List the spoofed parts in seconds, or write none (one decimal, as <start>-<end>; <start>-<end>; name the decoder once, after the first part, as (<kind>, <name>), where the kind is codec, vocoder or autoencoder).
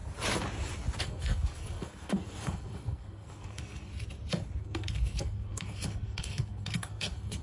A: 1.0-3.9 (codec, SNAC); 4.6-7.4